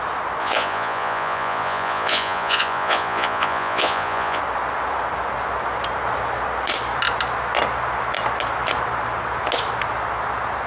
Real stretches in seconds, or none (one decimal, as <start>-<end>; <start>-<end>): 0.0-0.4; 4.4-10.7